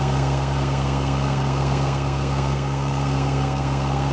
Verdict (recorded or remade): remade